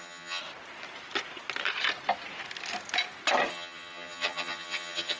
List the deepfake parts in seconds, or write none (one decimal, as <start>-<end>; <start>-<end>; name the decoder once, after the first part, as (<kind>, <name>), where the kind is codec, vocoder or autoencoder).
0.0-0.4 (vocoder, HiFi-GAN); 3.5-5.2